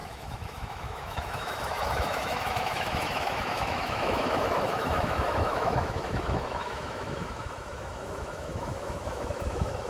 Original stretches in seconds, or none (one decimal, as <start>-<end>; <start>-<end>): none